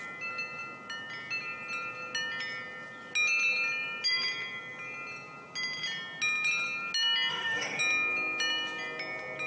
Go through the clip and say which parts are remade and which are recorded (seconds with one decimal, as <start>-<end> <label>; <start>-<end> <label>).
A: 0.0-7.3 recorded; 7.3-7.8 remade; 7.8-9.5 recorded